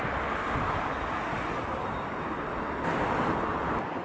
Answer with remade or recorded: recorded